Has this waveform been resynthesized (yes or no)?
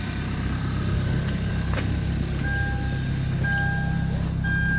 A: no